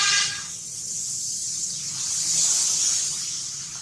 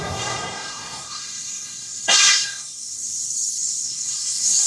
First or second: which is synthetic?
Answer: second